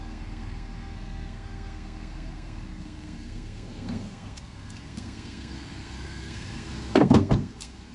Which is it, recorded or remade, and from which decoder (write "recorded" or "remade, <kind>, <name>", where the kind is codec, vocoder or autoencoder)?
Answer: remade, codec, SNAC